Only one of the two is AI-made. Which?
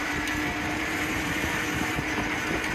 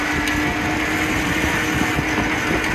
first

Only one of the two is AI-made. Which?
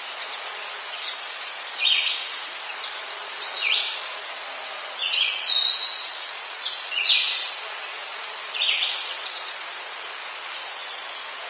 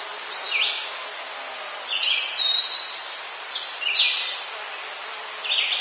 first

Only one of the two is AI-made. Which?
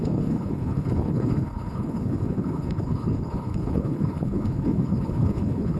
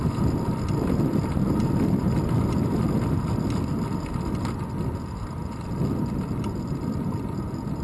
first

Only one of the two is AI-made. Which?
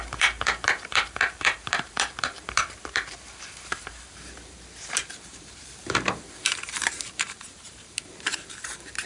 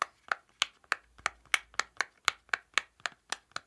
first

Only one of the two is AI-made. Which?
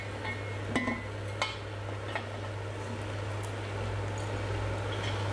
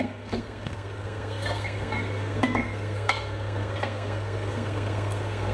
second